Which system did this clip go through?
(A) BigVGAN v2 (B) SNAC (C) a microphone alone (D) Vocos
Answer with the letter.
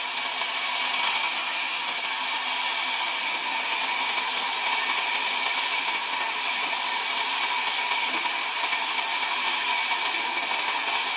C